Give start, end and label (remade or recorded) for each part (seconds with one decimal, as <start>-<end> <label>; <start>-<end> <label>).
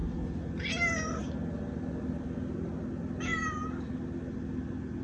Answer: 0.0-5.0 recorded